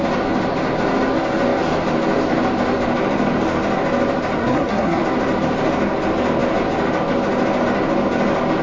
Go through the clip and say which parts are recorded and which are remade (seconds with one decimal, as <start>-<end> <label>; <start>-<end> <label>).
0.0-4.4 recorded; 4.4-5.0 remade; 5.0-8.6 recorded